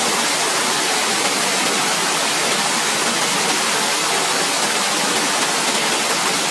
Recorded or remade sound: recorded